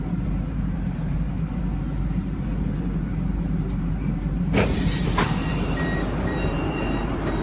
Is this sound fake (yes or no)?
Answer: yes